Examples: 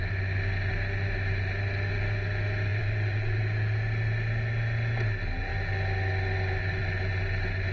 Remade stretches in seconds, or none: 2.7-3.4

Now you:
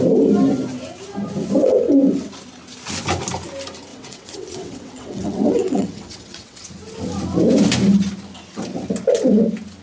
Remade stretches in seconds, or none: 1.6-2.3; 3.9-6.7

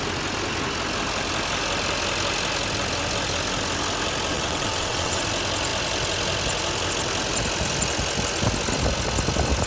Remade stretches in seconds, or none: 4.3-5.2

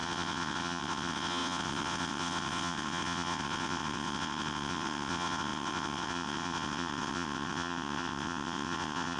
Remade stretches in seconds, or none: 0.0-9.2

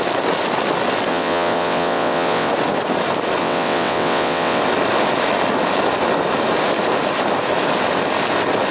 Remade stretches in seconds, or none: 1.1-2.5; 3.4-4.6